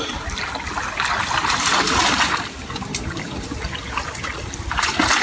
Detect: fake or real real